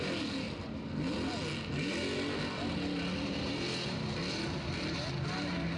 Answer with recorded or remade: recorded